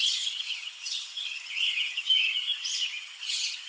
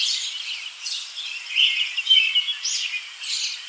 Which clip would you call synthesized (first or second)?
first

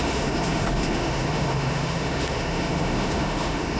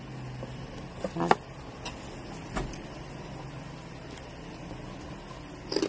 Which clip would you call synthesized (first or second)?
first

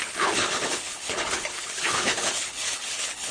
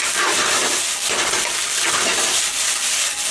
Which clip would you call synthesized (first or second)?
first